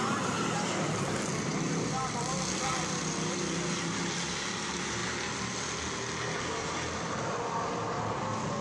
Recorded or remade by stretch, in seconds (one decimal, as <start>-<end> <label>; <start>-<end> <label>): 0.0-8.6 recorded